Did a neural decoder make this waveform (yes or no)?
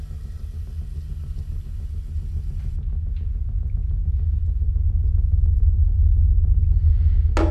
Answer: no